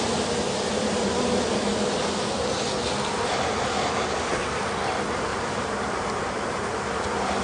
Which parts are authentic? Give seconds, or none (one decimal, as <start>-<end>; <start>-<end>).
0.0-5.3; 6.9-7.4